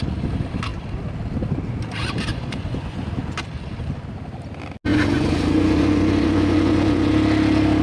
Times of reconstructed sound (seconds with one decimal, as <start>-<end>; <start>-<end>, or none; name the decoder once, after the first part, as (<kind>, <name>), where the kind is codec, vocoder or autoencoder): 2.3-3.1 (vocoder, Vocos); 4.9-7.1